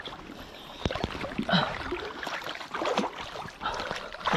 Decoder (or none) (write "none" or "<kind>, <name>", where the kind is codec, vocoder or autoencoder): none